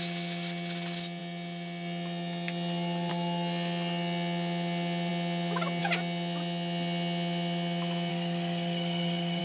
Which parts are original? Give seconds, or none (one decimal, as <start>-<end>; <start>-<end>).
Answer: 0.0-8.1